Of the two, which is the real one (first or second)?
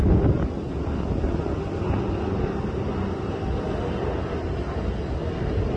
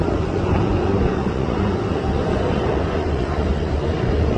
first